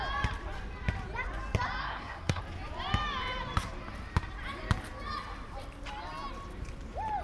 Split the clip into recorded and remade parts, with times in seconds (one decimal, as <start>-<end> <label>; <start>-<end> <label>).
0.0-1.8 recorded; 1.8-2.4 remade; 2.4-7.2 recorded